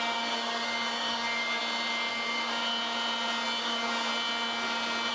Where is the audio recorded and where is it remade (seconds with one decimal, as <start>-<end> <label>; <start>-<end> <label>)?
0.0-1.6 remade; 1.6-2.1 recorded; 2.1-2.6 remade; 2.6-3.6 recorded; 3.6-4.1 remade; 4.1-5.1 recorded